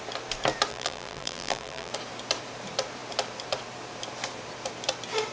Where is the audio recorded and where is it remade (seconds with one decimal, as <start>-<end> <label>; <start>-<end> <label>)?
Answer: 0.0-0.7 recorded; 0.7-1.9 remade; 1.9-5.3 recorded